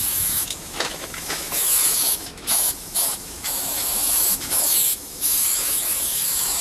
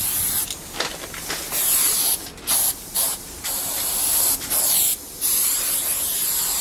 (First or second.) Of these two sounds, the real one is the second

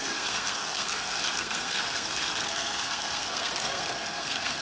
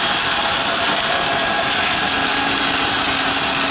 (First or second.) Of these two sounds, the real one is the second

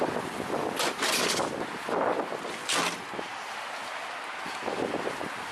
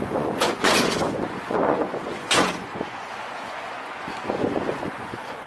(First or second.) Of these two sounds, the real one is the first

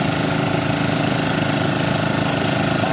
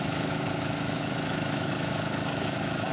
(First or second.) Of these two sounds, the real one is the first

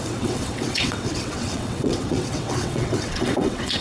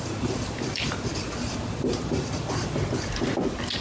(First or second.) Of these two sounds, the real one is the second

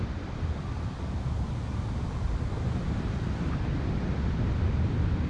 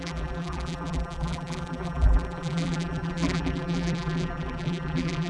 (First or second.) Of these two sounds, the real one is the first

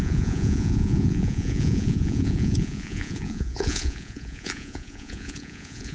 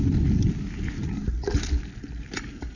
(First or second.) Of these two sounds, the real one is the second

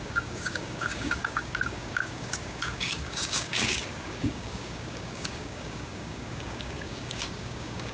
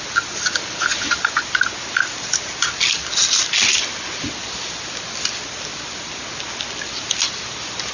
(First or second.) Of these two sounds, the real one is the second